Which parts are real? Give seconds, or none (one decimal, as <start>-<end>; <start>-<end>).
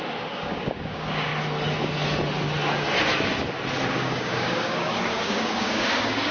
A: 1.3-3.9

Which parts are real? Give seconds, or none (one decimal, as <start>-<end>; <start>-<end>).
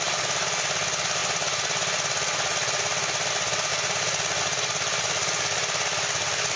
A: 0.0-6.6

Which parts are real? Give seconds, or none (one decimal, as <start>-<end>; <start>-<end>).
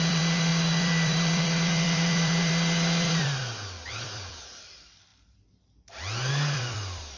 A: 3.4-3.9; 5.1-6.3